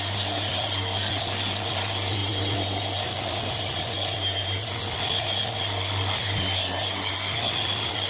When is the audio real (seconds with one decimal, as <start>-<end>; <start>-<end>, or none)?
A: 0.0-8.1